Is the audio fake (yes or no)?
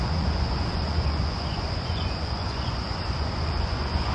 yes